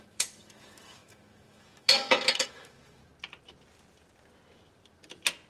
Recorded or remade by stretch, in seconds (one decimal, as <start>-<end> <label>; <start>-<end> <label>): 0.0-3.0 remade; 3.0-5.5 recorded